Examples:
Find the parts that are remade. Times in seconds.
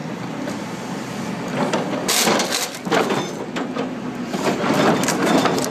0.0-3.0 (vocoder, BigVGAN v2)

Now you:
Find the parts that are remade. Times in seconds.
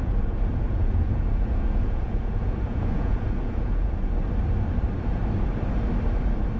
0.0-4.0 (vocoder, Vocos)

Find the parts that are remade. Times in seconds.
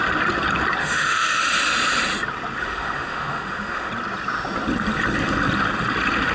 0.8-1.4 (autoencoder, DAC-VAE); 2.6-3.9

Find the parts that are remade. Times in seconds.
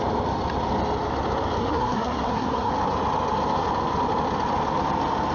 1.6-2.7 (codec, SNAC)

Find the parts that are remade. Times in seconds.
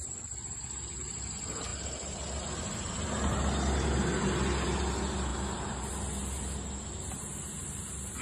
5.3-5.9 (vocoder, BigVGAN v2)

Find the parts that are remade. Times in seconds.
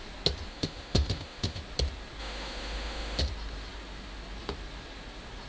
0.5-1.6 (autoencoder, DAC-VAE); 2.2-3.2